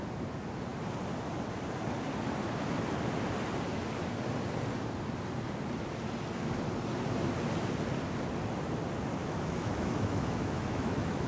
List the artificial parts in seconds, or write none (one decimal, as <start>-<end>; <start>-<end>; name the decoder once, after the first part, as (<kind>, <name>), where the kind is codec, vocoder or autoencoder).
9.2-11.3 (autoencoder, DAC-VAE)